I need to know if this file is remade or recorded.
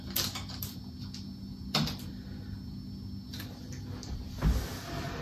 recorded